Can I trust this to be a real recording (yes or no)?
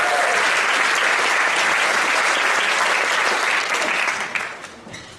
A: yes